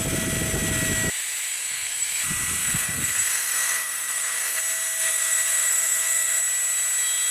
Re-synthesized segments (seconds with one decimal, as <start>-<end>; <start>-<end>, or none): 1.5-2.2; 2.6-4.6; 5.0-6.4